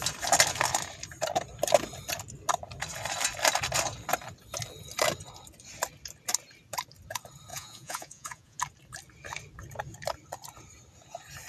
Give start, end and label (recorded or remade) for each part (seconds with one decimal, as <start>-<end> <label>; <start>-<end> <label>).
0.0-7.5 recorded; 7.5-8.6 remade; 8.6-11.5 recorded